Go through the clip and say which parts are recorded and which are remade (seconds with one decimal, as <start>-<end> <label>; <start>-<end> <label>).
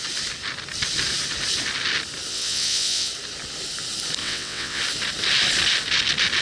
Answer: 0.0-2.3 recorded; 2.3-3.1 remade; 3.1-4.2 recorded; 4.2-4.8 remade; 4.8-6.4 recorded